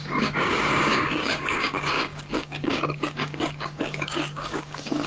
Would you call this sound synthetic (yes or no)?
yes